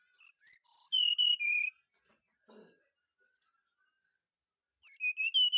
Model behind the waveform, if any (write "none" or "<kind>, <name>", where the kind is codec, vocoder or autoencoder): none